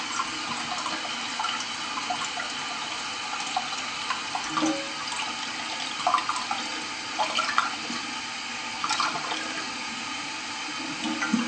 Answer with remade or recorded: recorded